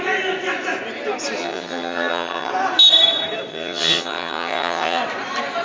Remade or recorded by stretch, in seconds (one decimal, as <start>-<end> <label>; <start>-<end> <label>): 0.0-1.4 recorded; 1.4-2.5 remade; 2.5-3.5 recorded; 3.5-5.0 remade; 5.0-5.6 recorded